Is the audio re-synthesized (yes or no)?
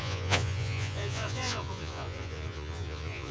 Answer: yes